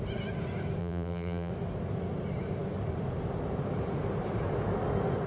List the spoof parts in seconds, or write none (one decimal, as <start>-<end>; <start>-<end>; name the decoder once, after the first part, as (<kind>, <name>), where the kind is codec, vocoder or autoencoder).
0.8-1.5 (vocoder, BigVGAN v2)